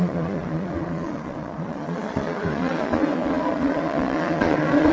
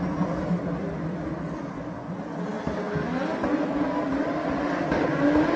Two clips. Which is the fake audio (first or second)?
first